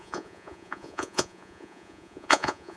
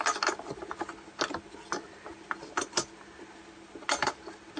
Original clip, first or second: second